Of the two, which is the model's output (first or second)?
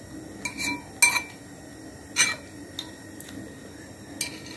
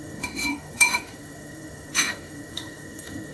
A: second